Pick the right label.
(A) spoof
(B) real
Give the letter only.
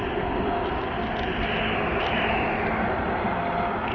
B